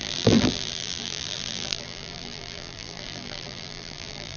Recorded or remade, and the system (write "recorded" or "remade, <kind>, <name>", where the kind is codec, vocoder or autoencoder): remade, vocoder, BigVGAN v2